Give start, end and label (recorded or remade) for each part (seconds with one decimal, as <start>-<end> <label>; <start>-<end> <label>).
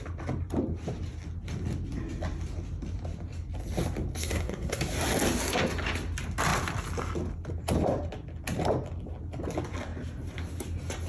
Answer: 0.0-4.2 recorded; 4.2-4.8 remade; 4.8-11.1 recorded